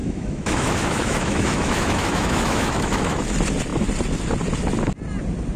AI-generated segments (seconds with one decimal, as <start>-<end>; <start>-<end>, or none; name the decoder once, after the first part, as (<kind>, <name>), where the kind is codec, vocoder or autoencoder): 0.0-3.2 (autoencoder, DAC-VAE)